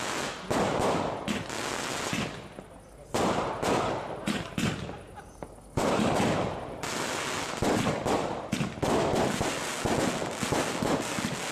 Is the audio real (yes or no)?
yes